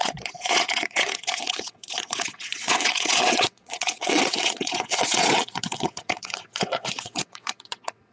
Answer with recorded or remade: remade